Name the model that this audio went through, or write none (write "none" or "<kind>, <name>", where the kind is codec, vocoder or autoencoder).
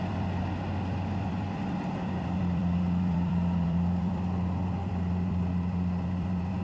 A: vocoder, BigVGAN v2